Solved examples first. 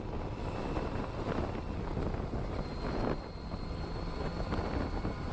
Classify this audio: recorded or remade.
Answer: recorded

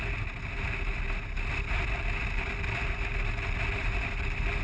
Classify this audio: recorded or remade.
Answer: recorded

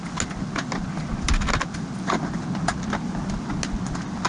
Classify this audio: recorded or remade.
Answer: recorded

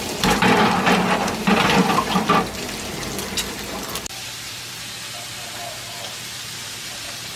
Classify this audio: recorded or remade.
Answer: recorded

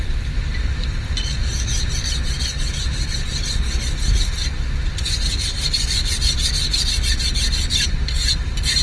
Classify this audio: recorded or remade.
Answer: recorded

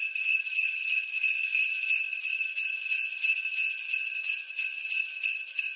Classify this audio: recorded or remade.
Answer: recorded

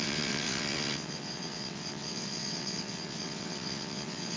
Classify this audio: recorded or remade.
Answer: remade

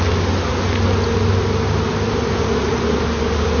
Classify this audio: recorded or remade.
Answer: recorded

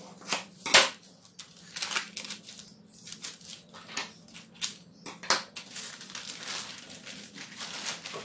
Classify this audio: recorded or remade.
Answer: recorded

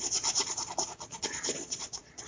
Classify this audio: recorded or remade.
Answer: remade